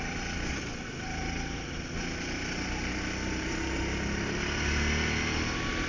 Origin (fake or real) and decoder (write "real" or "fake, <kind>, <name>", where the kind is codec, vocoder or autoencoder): real